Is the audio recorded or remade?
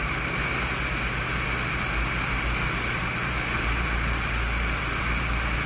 recorded